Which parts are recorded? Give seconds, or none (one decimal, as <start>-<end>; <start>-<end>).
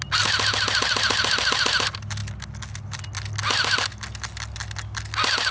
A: 0.0-5.5